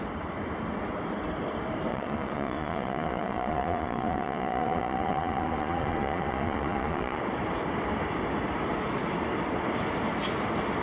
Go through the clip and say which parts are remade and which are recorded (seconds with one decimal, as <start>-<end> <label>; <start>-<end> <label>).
0.0-1.9 recorded; 1.9-7.2 remade; 7.2-10.8 recorded